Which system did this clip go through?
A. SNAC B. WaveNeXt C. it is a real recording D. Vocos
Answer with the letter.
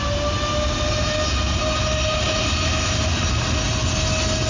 C